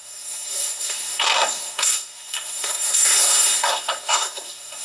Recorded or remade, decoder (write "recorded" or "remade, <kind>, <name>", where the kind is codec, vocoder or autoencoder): remade, codec, SNAC